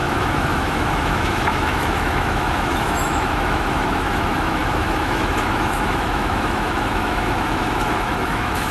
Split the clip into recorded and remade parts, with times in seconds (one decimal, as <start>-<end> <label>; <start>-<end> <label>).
0.0-8.7 remade